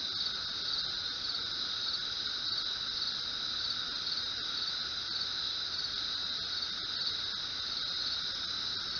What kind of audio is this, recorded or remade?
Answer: recorded